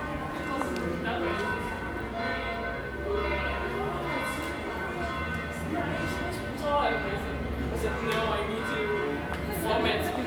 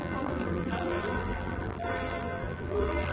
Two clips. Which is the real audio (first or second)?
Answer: first